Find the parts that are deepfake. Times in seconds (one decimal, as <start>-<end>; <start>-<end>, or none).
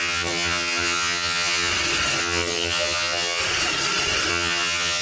0.0-1.7; 2.2-3.4; 4.3-5.0